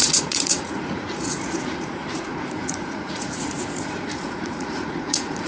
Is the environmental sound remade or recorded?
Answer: remade